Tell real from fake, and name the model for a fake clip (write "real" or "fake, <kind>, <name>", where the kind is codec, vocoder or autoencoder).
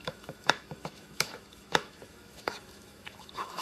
fake, autoencoder, DAC-VAE